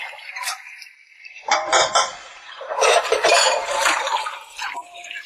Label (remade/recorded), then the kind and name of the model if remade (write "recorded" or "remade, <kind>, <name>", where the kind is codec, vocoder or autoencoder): remade, vocoder, BigVGAN v2